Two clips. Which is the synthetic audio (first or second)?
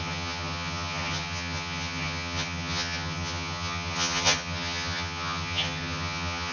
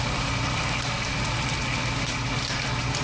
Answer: first